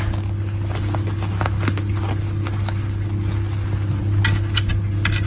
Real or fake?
real